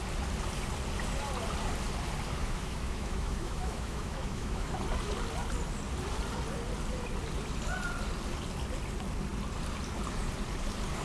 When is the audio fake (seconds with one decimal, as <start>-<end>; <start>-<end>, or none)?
2.4-4.7